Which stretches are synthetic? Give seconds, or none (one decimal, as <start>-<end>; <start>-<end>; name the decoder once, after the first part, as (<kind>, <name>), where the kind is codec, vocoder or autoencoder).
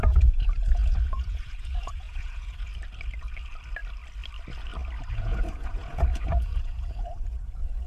0.0-2.7 (vocoder, Vocos); 5.1-7.9